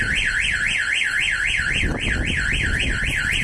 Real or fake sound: real